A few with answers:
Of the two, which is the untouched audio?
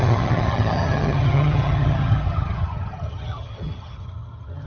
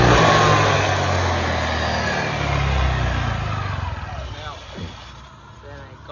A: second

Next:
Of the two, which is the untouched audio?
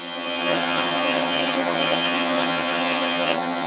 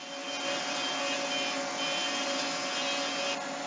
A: second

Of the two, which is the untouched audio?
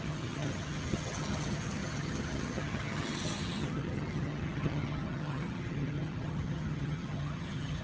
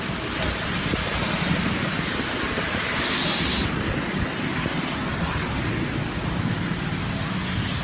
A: second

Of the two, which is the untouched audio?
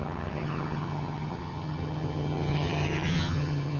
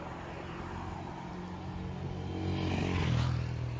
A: second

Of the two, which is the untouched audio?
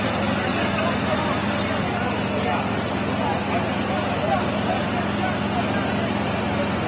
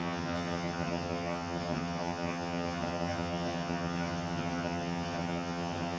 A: first